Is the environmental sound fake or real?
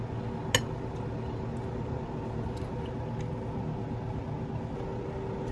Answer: real